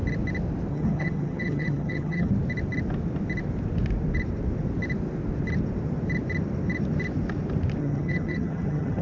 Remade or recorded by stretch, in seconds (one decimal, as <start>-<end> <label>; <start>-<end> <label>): 0.0-0.7 recorded; 0.7-2.3 remade; 2.3-7.8 recorded; 7.8-9.0 remade